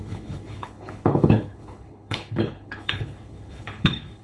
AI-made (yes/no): yes